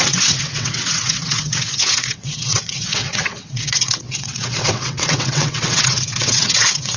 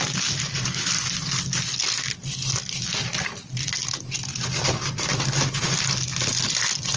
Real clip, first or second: second